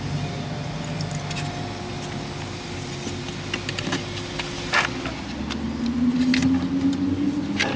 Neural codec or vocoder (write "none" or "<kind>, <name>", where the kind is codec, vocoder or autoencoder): none